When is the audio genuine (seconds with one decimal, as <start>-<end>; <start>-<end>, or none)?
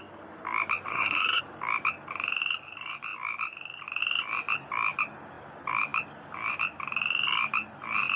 0.0-0.9; 1.4-8.2